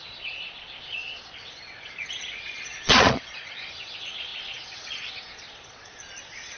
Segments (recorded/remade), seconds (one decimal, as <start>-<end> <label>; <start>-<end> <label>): 0.0-6.6 remade